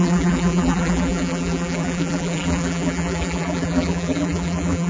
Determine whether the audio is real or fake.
fake